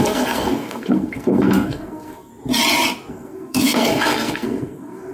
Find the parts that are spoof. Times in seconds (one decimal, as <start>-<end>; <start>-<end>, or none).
0.0-2.3; 3.1-5.1